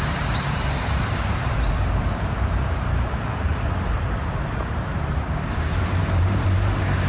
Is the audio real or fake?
fake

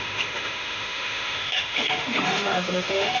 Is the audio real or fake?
fake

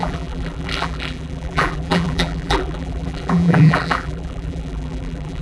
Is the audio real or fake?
fake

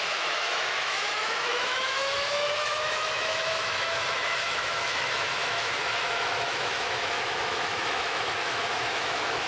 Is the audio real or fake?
fake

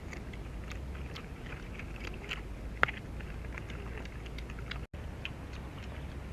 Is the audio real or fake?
real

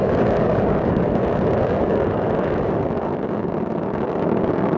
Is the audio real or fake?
fake